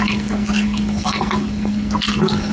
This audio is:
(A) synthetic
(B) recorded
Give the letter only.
A